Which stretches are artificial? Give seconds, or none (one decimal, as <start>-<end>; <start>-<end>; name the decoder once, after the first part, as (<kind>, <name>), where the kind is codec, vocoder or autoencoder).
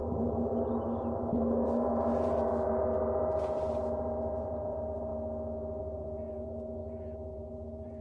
0.0-5.1 (vocoder, BigVGAN v2); 5.8-8.0